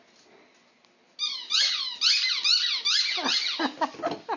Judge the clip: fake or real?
real